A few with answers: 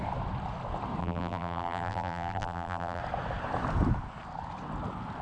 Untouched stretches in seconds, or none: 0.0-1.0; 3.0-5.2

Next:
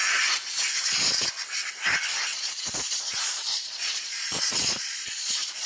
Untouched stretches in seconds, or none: 0.0-2.3

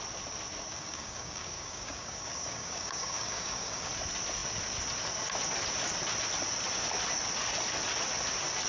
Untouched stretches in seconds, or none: 0.0-0.7; 3.9-8.7

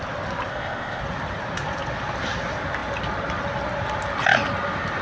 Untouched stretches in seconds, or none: 0.0-0.5; 1.0-5.0

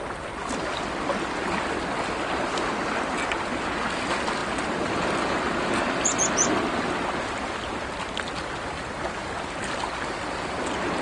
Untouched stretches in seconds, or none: 0.0-11.0

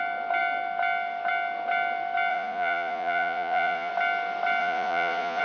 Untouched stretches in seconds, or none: 0.0-2.3; 3.9-4.6